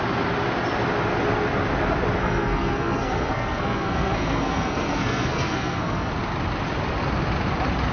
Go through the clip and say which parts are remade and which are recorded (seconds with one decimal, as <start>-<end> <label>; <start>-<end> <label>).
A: 0.0-2.2 recorded; 2.2-6.1 remade; 6.1-7.9 recorded